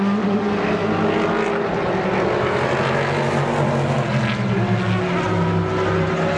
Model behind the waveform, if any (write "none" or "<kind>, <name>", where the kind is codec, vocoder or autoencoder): none